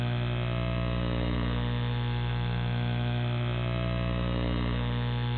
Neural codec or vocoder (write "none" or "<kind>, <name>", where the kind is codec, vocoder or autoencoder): autoencoder, DAC-VAE